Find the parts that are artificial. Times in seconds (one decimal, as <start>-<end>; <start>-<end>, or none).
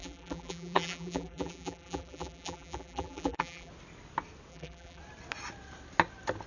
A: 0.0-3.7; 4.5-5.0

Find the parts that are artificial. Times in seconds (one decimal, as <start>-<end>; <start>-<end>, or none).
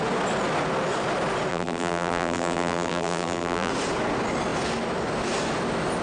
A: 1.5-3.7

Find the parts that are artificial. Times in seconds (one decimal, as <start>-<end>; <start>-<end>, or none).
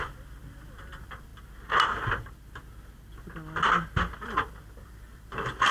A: 0.0-1.3; 4.2-5.7